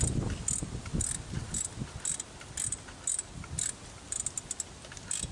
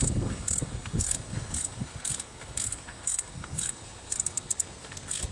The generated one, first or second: second